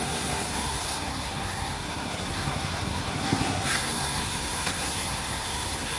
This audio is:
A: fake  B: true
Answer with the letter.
A